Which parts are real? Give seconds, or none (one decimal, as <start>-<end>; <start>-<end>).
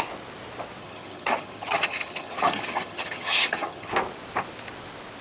0.0-0.8; 3.9-5.2